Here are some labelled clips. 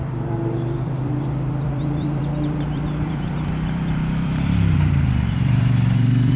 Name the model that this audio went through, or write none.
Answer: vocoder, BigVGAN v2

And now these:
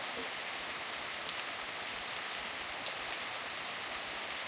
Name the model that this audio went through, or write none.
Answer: none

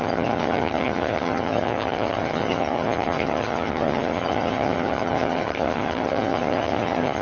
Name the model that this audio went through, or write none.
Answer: vocoder, HiFi-GAN